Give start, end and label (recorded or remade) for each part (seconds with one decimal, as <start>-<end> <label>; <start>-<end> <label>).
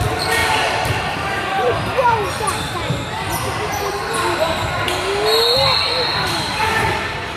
0.0-0.4 recorded; 0.4-2.4 remade; 2.4-6.1 recorded; 6.1-6.7 remade; 6.7-7.4 recorded